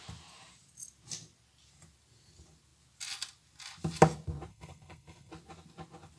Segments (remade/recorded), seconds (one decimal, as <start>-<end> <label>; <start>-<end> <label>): 0.0-4.5 recorded; 4.5-5.3 remade; 5.3-6.2 recorded